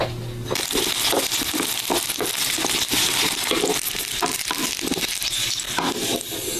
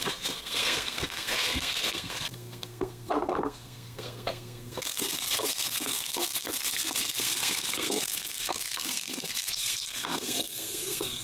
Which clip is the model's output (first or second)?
second